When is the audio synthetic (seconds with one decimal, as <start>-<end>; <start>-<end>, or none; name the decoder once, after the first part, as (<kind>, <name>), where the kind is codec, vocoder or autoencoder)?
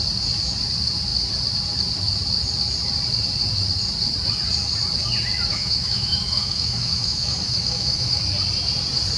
5.5-8.2 (autoencoder, DAC-VAE)